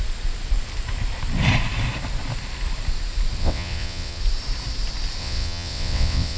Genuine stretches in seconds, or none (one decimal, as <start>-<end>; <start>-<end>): 0.0-3.4; 4.2-5.2